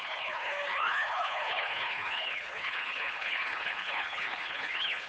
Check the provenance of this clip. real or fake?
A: fake